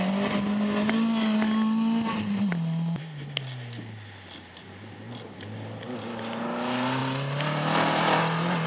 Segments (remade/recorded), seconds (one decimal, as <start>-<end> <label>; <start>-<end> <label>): 0.0-8.7 recorded

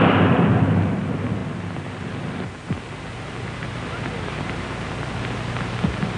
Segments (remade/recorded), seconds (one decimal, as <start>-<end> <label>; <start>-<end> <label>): 0.0-6.2 recorded

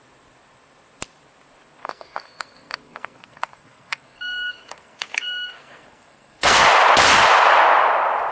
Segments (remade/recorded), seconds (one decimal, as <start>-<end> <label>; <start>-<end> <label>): 0.0-1.8 recorded; 1.8-6.6 remade; 6.6-8.3 recorded

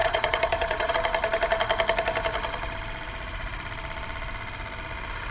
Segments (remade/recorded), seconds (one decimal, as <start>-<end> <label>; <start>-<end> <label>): 0.0-0.9 remade; 0.9-5.3 recorded

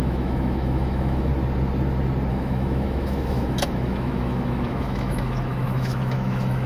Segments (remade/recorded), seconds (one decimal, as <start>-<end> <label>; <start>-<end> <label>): 0.0-1.3 remade; 1.3-2.3 recorded; 2.3-6.7 remade

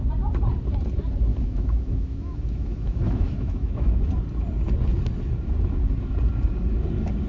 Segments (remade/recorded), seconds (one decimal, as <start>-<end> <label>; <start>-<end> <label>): 0.0-1.3 recorded; 1.3-3.9 remade; 3.9-7.3 recorded

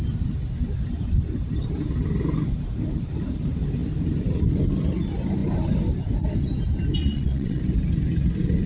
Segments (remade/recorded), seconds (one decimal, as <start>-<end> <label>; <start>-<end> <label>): 0.0-7.0 recorded; 7.0-7.6 remade; 7.6-8.7 recorded